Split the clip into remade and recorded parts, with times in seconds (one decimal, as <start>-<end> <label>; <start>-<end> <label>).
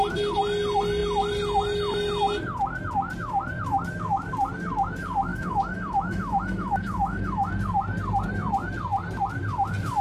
0.0-5.3 recorded; 5.3-7.5 remade; 7.5-10.0 recorded